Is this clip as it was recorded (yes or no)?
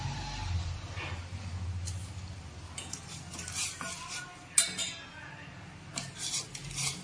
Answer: yes